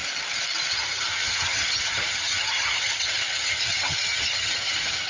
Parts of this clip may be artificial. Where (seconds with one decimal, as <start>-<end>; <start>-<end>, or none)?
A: 0.7-5.1